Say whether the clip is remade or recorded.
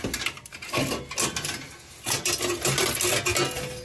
recorded